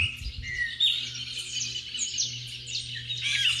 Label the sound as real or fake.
real